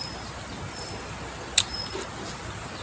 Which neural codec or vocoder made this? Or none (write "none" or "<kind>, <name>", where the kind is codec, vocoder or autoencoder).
none